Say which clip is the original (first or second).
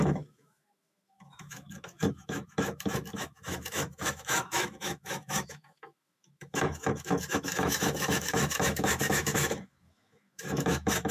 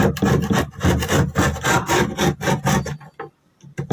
second